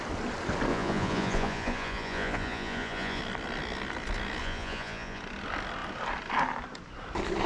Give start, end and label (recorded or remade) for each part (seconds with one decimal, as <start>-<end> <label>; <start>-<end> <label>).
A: 0.0-0.7 recorded; 0.7-3.2 remade; 3.2-4.4 recorded; 4.4-5.2 remade; 5.2-7.5 recorded